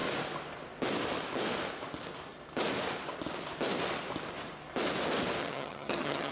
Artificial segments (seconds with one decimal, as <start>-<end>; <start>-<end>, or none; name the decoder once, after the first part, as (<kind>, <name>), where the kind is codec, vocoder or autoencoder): 5.4-6.3 (vocoder, HiFi-GAN)